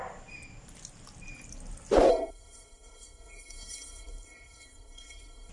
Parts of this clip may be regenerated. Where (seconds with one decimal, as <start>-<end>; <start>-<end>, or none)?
2.1-5.5